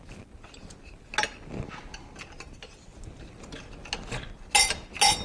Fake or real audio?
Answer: real